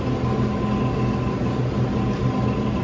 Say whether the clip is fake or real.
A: real